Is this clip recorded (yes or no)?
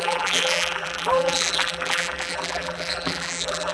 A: no